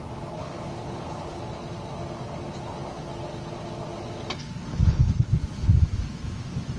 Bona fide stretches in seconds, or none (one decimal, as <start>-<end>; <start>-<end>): 0.0-0.4; 1.4-4.8; 5.7-6.8